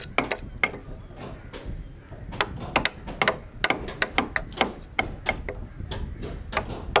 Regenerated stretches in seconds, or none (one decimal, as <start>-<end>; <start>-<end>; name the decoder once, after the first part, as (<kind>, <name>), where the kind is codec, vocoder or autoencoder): none